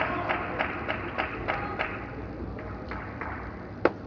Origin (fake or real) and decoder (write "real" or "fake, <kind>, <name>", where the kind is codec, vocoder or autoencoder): real